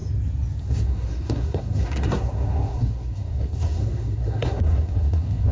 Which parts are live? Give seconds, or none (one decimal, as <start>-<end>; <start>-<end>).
0.0-0.6